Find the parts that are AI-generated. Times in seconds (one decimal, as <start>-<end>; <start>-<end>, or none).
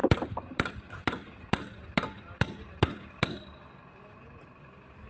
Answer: 0.0-5.1